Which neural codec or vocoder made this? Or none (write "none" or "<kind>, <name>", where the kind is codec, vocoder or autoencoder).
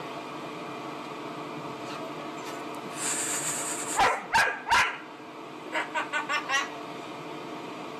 none